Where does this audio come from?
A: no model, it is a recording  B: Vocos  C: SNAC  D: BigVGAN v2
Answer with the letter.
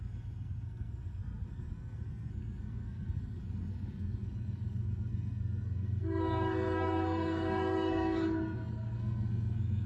C